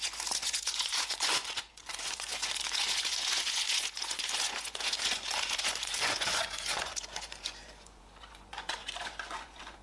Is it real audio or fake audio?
fake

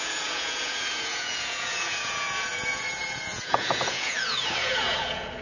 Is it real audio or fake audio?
fake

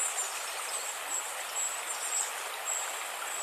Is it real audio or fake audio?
real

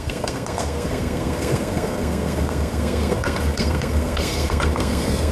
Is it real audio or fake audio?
fake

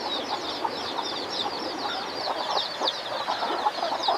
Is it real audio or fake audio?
fake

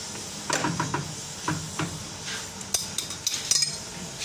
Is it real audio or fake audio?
real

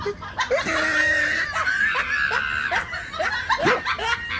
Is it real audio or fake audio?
real